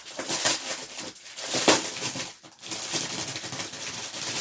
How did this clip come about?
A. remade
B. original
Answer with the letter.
A